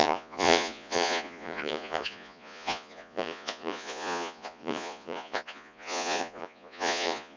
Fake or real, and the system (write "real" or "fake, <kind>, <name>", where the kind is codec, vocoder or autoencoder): fake, vocoder, Vocos